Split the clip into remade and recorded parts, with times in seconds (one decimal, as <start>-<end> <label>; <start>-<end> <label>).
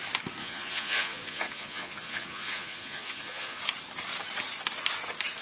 0.0-0.4 recorded; 0.4-3.6 remade; 3.6-5.4 recorded